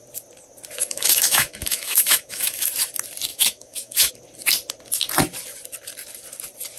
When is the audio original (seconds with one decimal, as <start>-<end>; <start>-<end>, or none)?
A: 0.0-0.8; 2.7-3.3; 4.1-6.8